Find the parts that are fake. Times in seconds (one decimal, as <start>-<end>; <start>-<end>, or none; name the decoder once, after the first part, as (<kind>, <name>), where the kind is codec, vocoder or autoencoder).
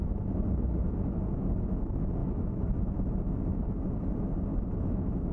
2.2-2.9 (autoencoder, DAC-VAE); 4.5-5.3